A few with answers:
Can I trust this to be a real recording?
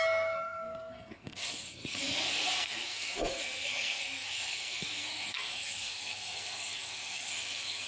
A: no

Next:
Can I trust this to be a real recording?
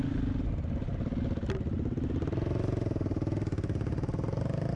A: yes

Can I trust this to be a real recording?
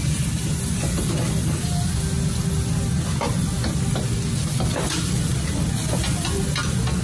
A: yes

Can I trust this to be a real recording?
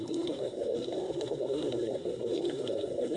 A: no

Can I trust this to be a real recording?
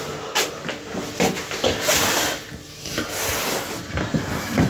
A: yes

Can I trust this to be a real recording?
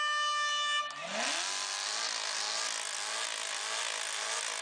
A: yes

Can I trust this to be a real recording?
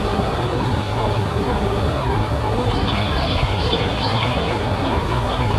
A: no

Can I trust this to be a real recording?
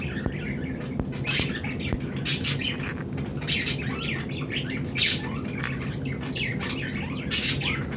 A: yes